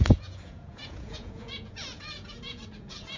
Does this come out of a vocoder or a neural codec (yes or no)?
yes